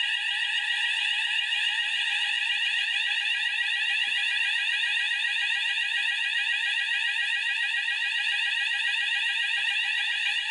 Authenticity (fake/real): real